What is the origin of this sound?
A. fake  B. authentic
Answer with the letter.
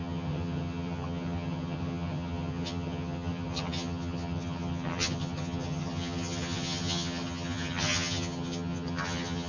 A